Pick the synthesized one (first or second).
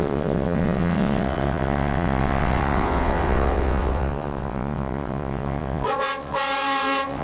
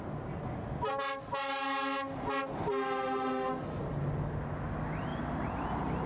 first